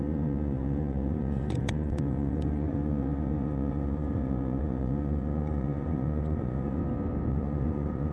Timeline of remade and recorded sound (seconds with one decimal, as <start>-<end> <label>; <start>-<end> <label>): 0.0-6.8 remade; 6.8-7.3 recorded; 7.3-8.1 remade